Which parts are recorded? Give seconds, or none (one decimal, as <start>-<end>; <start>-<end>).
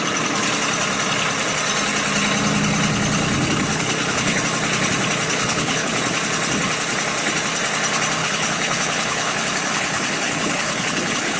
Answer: 0.0-3.7; 4.4-5.3; 6.0-8.2